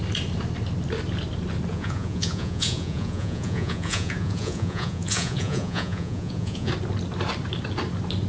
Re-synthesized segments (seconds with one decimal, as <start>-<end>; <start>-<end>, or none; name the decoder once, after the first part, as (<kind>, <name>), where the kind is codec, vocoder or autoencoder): 1.7-6.7 (vocoder, Vocos)